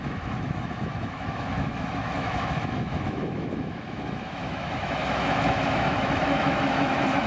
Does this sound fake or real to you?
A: fake